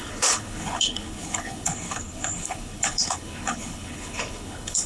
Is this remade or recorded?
remade